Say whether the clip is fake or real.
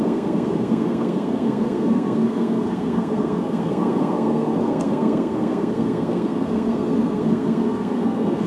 fake